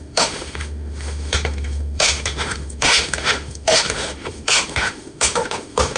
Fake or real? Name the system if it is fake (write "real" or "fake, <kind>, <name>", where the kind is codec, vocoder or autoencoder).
fake, autoencoder, DAC-VAE